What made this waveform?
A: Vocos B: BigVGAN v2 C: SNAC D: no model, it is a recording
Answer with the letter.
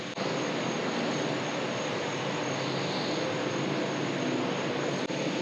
D